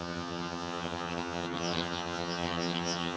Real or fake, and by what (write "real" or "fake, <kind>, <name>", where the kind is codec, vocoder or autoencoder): fake, vocoder, HiFi-GAN